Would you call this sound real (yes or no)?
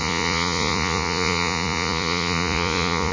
no